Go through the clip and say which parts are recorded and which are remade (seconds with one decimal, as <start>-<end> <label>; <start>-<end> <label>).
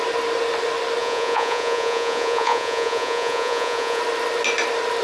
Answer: 0.0-1.0 recorded; 1.0-4.0 remade; 4.0-5.0 recorded